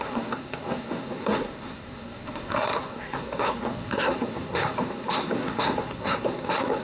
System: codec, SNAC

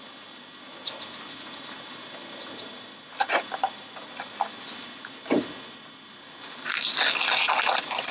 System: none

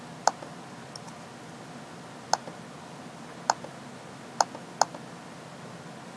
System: none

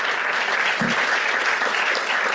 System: none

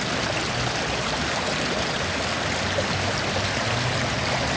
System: none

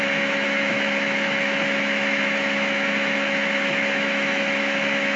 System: autoencoder, DAC-VAE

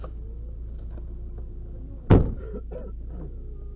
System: none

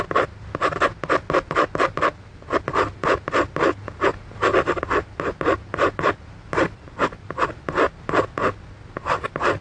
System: none